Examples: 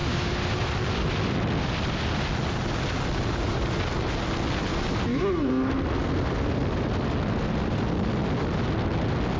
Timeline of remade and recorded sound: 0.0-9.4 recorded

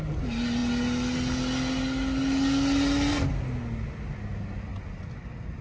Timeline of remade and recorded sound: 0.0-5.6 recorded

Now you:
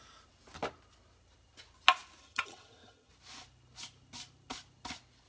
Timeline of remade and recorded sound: 0.0-2.2 recorded; 2.2-3.1 remade; 3.1-5.3 recorded

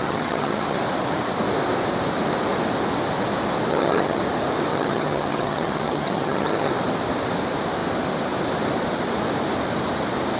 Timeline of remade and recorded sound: 0.0-0.8 remade; 0.8-3.7 recorded; 3.7-4.2 remade; 4.2-4.7 recorded; 4.7-6.7 remade; 6.7-10.4 recorded

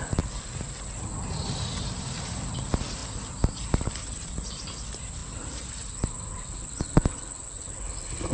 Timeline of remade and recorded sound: 0.0-8.3 recorded

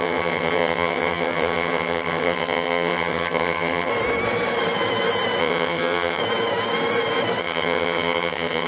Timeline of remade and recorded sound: 0.0-3.9 remade; 3.9-5.4 recorded; 5.4-6.2 remade; 6.2-7.4 recorded; 7.4-8.7 remade